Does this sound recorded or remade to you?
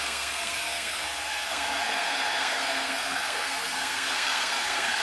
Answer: remade